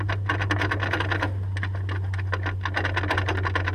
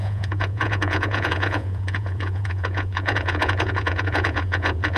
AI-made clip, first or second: second